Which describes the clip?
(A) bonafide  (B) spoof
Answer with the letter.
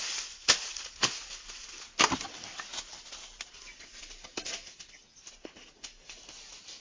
A